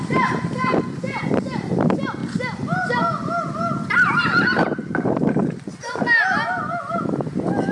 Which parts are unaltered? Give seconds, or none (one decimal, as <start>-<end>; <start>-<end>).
0.0-7.7